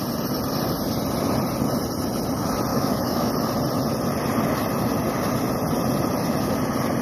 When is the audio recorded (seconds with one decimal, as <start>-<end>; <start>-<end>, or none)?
0.0-2.7; 3.3-7.0